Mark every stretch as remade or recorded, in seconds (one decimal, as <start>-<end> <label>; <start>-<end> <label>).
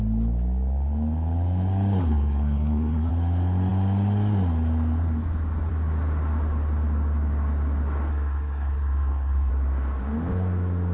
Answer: 0.0-2.0 recorded; 2.0-3.1 remade; 3.1-8.1 recorded; 8.1-9.5 remade; 9.5-10.9 recorded